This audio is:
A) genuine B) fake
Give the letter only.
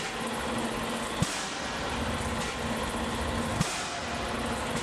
A